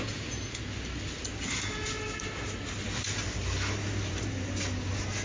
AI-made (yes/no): no